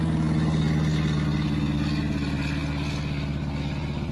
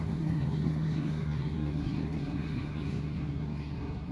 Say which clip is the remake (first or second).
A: second